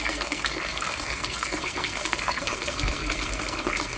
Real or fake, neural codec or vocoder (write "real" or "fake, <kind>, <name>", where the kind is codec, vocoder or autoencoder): fake, codec, SNAC